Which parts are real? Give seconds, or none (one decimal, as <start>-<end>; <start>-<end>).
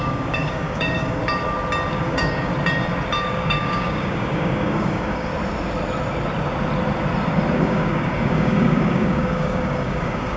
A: 1.2-1.9; 2.5-3.2; 5.3-7.6